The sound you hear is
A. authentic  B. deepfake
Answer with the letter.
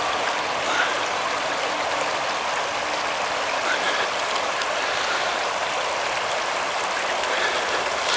A